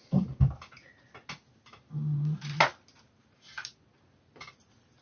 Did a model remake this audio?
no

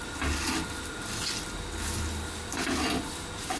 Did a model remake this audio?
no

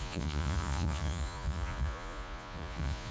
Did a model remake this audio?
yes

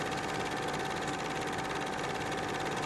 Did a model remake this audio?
no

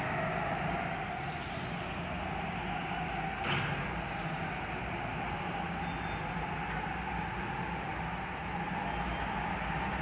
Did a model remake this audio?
no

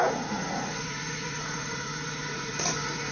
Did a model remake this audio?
yes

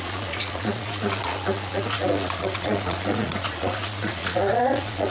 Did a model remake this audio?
yes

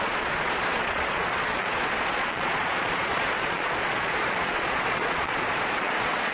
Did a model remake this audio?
yes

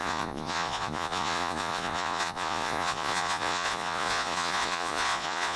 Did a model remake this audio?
yes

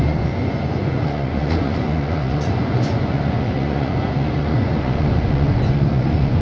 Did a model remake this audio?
yes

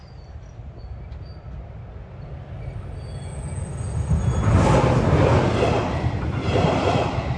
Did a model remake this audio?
no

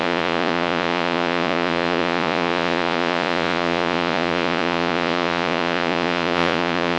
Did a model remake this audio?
yes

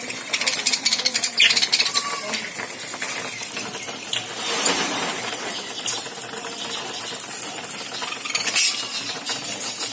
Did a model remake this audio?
no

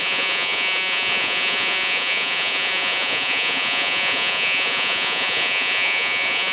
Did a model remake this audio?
yes